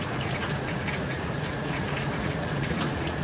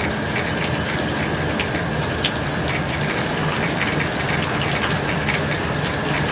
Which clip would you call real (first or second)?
second